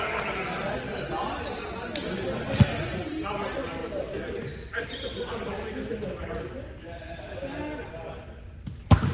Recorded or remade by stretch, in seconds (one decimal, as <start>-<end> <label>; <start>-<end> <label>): 0.0-9.1 recorded